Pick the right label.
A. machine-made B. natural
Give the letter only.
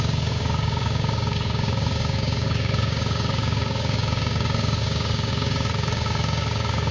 A